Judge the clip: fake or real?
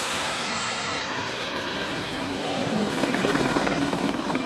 fake